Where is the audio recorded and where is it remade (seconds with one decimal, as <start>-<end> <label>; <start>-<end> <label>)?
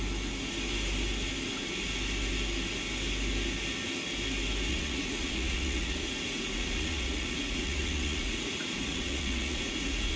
0.0-4.7 recorded; 4.7-10.2 remade